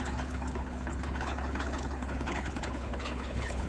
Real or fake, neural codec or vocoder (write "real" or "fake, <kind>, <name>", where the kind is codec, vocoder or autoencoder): fake, codec, HILCodec